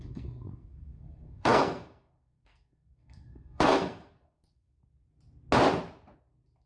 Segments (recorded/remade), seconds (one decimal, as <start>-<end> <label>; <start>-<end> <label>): 0.0-4.8 remade; 4.8-6.7 recorded